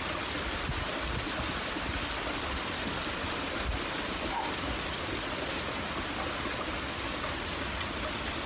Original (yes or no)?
yes